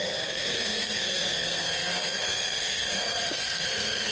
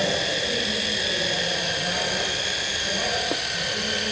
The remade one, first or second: first